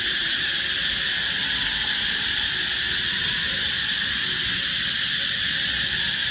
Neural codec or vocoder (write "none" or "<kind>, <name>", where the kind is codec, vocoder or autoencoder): none